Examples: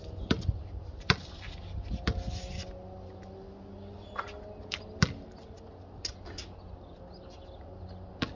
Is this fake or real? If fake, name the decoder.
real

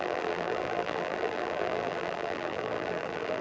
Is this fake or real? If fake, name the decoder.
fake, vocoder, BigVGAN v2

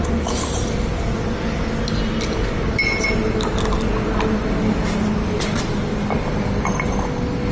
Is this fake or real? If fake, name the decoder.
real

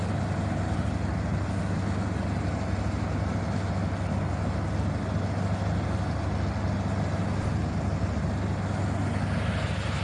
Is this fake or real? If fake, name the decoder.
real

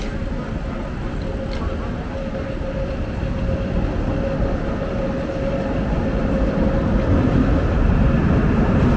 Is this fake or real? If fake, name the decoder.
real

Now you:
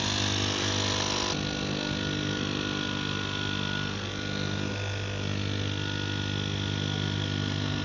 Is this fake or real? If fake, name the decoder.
real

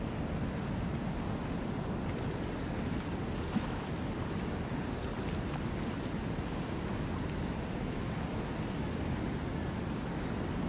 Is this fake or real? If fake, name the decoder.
real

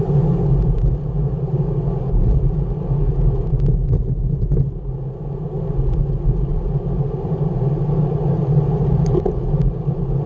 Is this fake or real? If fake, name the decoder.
real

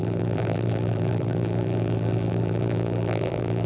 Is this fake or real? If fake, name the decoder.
fake, vocoder, BigVGAN v2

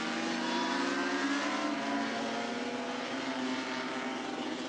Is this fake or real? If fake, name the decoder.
real